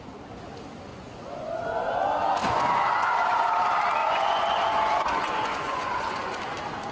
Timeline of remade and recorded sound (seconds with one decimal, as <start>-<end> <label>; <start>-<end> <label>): 0.0-0.9 recorded; 0.9-3.5 remade; 3.5-4.0 recorded; 4.0-6.4 remade; 6.4-6.9 recorded